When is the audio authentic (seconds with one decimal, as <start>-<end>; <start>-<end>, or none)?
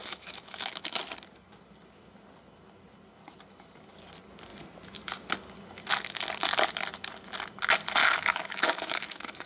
1.0-8.0